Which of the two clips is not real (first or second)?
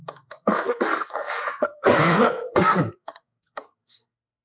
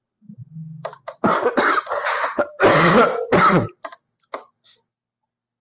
first